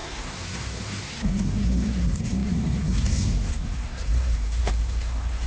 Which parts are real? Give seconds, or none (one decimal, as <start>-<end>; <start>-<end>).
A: none